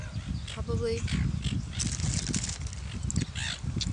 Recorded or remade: recorded